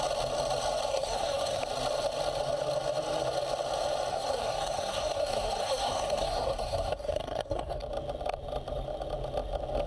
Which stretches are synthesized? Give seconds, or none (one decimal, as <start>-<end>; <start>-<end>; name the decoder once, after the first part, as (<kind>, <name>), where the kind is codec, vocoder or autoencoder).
0.9-1.6 (codec, SNAC); 4.1-7.8